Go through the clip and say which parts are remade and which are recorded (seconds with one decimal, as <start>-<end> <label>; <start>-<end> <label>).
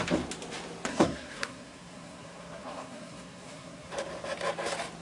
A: 0.0-0.9 recorded; 0.9-3.9 remade; 3.9-5.0 recorded